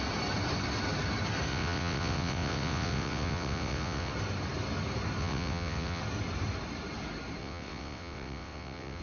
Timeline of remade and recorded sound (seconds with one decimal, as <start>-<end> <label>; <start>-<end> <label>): 0.0-1.5 recorded; 1.5-4.1 remade; 4.1-5.2 recorded; 5.2-6.0 remade; 6.0-7.4 recorded; 7.4-9.0 remade